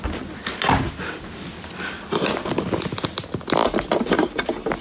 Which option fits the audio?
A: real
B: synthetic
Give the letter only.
A